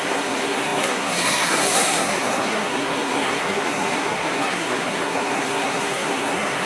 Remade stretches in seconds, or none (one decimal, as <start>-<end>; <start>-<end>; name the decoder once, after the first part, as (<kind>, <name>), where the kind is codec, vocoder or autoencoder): 0.0-6.7 (codec, SNAC)